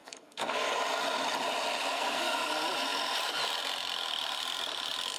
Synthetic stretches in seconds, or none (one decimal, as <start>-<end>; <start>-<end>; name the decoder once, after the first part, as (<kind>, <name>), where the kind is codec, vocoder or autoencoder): 0.0-0.7 (codec, SNAC); 1.9-2.5